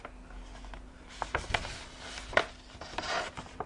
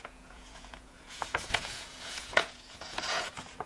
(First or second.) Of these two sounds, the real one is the first